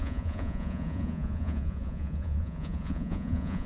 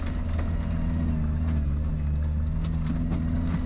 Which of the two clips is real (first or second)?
second